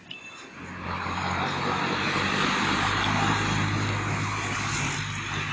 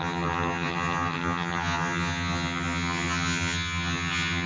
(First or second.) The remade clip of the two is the second